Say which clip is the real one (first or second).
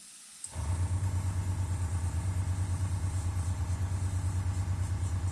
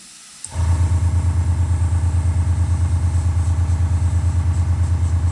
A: second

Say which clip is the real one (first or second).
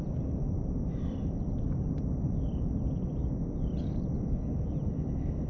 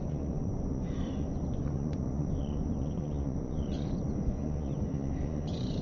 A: first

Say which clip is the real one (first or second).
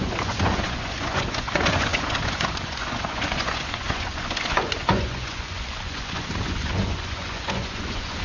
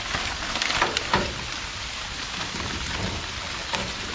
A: second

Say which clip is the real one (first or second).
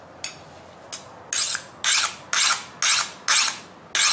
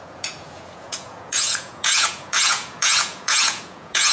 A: first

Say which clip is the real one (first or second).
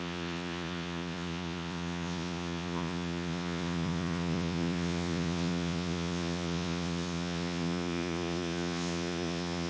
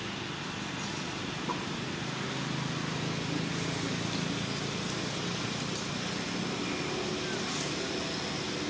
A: second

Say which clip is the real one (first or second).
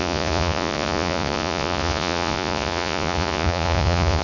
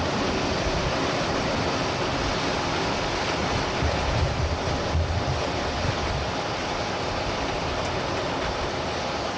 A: second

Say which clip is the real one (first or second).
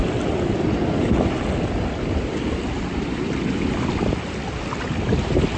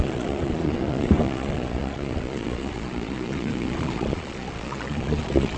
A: first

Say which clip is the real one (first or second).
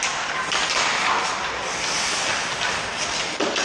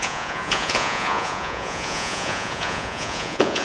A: first